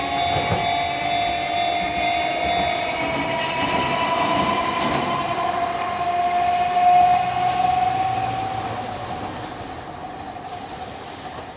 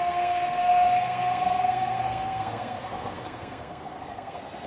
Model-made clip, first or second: second